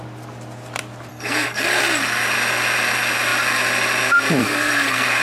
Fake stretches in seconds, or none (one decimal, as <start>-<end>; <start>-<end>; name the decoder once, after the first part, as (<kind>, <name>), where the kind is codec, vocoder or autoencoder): 1.1-1.8 (codec, SNAC); 4.4-5.2